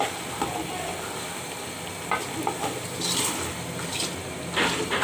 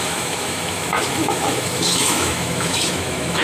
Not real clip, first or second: second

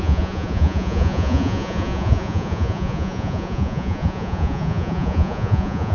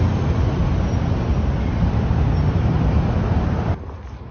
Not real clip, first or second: first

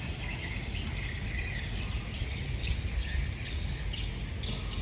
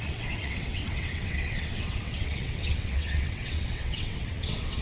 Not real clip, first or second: second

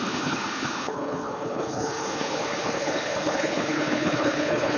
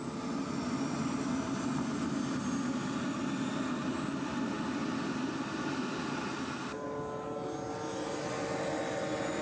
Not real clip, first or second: first